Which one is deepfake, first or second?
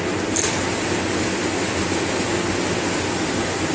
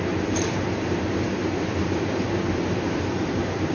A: second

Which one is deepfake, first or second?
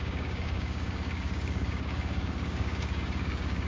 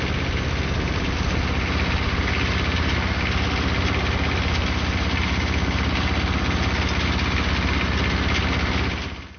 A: first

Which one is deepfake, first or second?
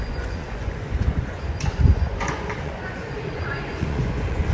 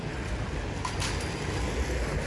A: first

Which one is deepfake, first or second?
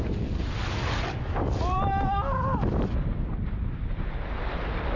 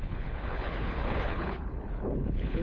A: second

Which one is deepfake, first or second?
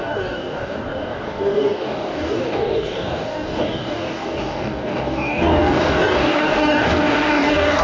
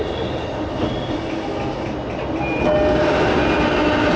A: first